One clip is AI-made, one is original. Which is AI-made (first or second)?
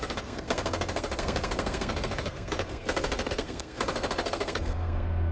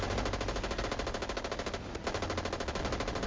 first